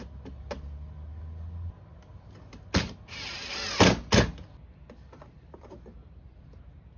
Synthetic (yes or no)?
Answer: no